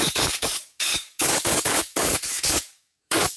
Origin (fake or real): fake